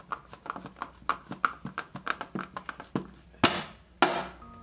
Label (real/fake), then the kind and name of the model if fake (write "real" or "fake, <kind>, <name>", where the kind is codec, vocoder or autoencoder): real